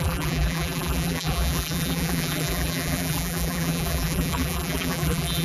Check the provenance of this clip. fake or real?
fake